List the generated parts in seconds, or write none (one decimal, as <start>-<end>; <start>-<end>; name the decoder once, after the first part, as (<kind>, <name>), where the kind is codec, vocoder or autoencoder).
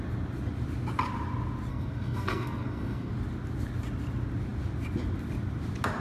1.7-3.1 (codec, SNAC)